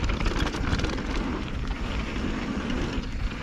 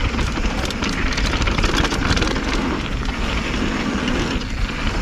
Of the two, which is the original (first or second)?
second